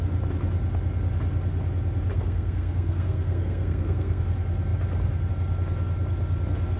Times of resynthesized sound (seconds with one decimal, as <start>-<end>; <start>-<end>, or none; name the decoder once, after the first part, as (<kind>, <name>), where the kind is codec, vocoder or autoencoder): 2.1-4.2 (codec, SNAC)